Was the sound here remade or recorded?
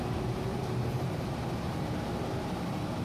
remade